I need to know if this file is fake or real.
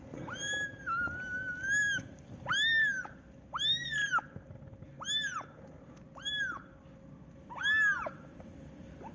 real